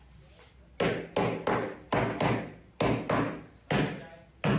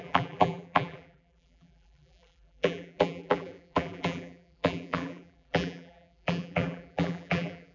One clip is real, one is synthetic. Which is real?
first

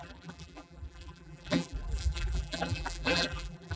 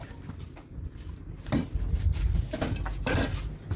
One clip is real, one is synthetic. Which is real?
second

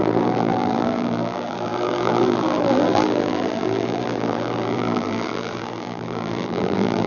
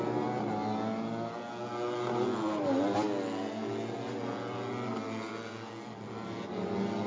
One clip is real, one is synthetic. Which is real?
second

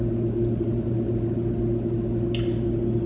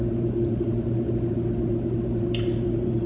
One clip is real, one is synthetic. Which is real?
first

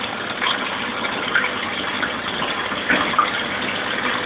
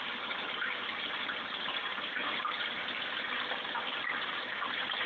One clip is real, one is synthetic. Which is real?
first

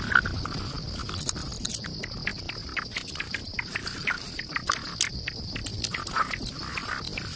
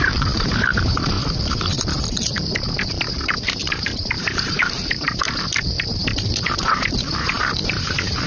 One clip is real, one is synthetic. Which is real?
first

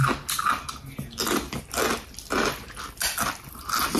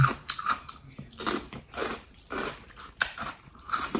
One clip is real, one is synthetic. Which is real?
first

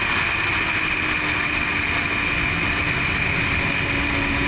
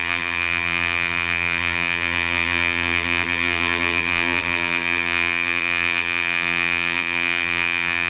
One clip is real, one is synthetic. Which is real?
first